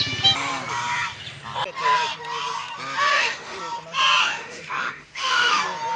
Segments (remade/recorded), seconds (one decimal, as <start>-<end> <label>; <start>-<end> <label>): 0.0-3.1 recorded; 3.1-3.6 remade; 3.6-4.2 recorded; 4.2-5.6 remade; 5.6-6.0 recorded